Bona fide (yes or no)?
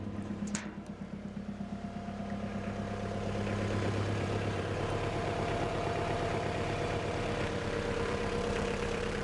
no